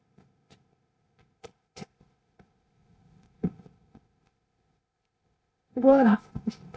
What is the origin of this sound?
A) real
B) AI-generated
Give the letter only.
B